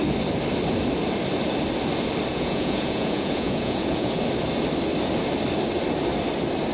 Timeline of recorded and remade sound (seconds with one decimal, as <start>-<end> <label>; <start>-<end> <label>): 0.0-2.3 recorded; 2.3-4.2 remade; 4.2-6.7 recorded